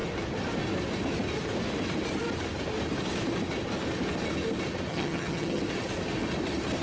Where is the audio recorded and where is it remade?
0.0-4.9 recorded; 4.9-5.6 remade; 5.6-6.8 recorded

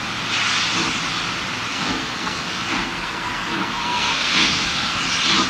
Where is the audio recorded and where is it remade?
0.0-1.7 recorded; 1.7-5.0 remade; 5.0-5.5 recorded

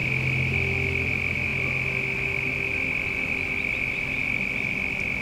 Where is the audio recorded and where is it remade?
0.0-5.2 recorded